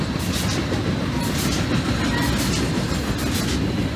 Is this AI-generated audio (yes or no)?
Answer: no